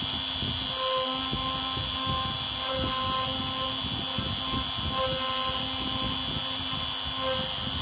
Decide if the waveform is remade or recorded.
recorded